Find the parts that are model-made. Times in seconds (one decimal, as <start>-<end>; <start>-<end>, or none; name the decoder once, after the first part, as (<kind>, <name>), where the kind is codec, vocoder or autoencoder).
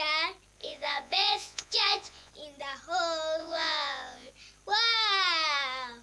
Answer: 0.6-2.3 (vocoder, Vocos); 3.4-4.3